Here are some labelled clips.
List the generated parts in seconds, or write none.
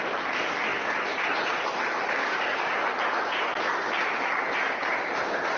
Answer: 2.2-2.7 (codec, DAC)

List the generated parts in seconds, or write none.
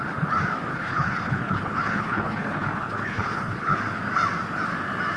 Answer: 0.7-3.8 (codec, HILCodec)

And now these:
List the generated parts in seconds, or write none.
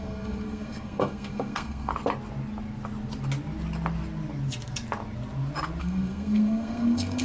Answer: 0.0-1.9 (codec, SNAC); 5.8-7.2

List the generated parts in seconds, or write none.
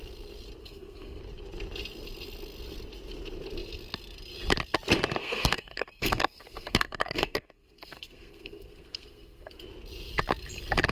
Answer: 0.6-1.2 (codec, SNAC); 5.2-9.6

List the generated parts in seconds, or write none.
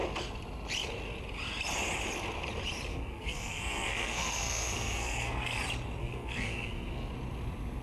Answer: 2.9-5.6 (codec, SNAC); 6.0-7.1